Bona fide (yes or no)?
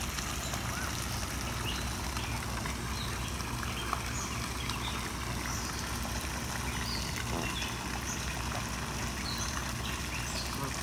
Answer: yes